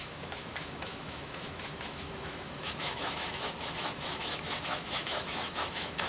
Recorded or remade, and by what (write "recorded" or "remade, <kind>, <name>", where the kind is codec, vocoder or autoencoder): remade, autoencoder, DAC-VAE